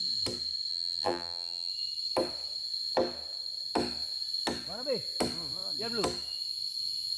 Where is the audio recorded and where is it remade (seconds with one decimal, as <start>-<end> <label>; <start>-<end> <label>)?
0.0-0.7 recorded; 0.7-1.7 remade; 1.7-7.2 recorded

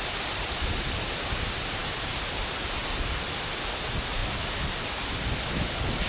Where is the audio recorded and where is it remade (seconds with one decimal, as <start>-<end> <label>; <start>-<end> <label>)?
0.0-6.1 recorded

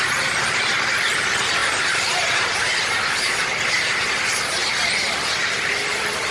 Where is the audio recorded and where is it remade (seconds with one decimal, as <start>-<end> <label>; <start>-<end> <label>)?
0.0-1.6 recorded; 1.6-2.6 remade; 2.6-6.3 recorded

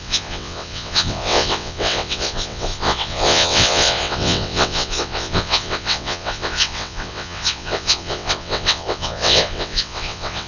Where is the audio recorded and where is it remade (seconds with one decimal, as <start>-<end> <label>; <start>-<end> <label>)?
0.0-10.5 remade